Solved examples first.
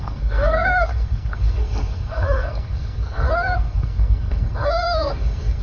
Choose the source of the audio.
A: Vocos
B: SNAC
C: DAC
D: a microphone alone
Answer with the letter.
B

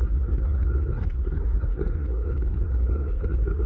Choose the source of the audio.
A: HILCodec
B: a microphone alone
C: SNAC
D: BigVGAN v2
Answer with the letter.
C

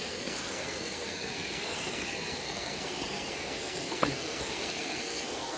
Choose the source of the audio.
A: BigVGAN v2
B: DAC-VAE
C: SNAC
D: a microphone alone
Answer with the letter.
C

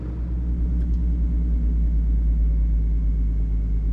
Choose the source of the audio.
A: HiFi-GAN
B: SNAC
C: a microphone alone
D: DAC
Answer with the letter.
C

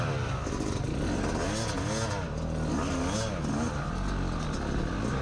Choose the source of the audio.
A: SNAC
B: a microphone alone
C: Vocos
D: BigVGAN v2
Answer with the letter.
B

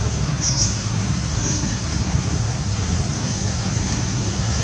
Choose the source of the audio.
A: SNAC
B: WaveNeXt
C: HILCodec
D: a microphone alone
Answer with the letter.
A